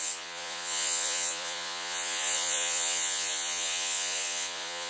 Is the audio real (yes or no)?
no